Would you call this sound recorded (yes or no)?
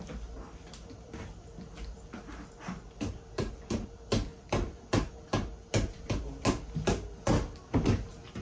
yes